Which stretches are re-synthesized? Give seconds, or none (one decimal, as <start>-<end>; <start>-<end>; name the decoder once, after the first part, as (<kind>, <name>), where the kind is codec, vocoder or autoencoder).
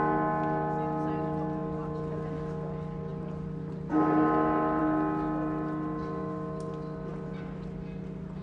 none